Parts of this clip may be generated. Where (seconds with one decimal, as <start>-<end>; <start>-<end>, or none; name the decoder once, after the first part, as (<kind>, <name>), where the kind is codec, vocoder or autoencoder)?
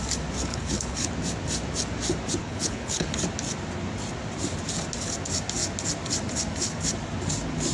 0.5-1.1 (codec, HILCodec); 2.4-3.2